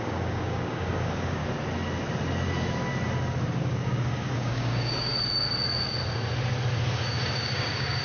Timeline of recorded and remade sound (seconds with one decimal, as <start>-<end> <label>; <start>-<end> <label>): 0.0-1.4 remade; 1.4-3.6 recorded; 3.6-5.1 remade; 5.1-6.9 recorded; 6.9-8.0 remade